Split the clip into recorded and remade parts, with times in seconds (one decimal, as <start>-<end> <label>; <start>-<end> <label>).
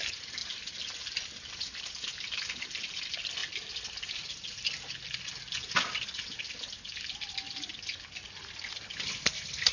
0.0-9.7 recorded